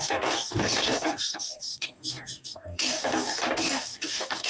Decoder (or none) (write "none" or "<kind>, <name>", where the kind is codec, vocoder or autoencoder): codec, DAC